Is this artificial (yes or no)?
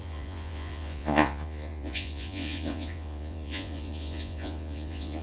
yes